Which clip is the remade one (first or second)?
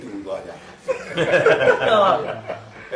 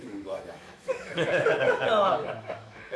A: second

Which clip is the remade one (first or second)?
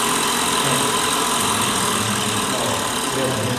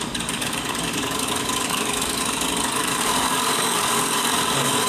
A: second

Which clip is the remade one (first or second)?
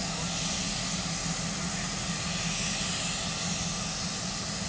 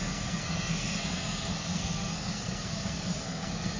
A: second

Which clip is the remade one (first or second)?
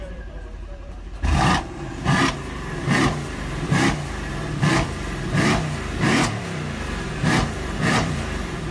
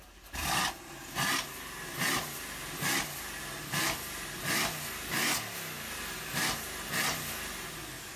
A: first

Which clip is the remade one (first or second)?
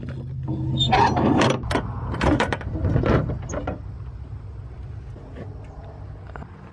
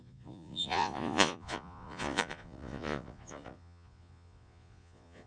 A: second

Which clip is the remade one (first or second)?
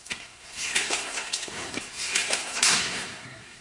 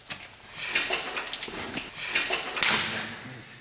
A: first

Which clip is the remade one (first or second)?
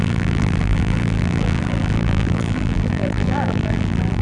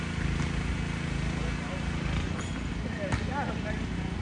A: first